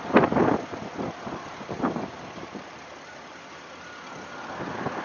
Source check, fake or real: real